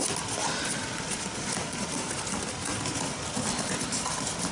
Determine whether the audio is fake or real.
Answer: real